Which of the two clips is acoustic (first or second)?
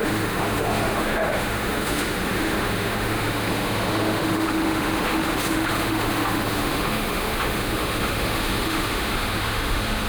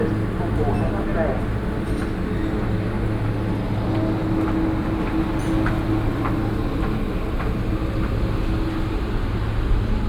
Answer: second